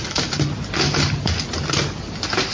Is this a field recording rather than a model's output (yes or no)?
no